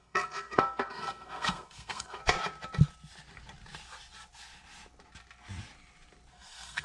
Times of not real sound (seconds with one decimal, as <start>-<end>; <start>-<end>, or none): 0.0-2.2; 6.3-6.8